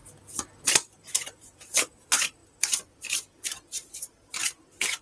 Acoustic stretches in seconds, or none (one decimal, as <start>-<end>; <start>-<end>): 0.0-0.7; 4.3-5.0